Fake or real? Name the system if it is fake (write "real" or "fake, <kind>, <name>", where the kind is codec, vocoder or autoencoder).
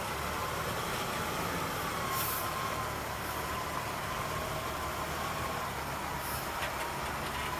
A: real